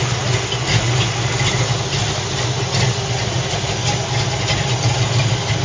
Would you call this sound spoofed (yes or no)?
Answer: no